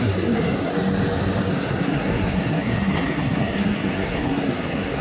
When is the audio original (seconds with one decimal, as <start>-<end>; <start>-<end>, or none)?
0.7-1.5